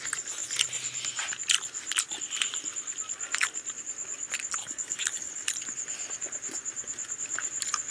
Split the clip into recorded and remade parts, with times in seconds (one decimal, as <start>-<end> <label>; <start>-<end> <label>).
0.0-4.6 recorded; 4.6-5.5 remade; 5.5-7.9 recorded